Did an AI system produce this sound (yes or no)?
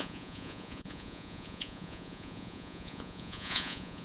yes